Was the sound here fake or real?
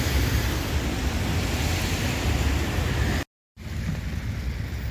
real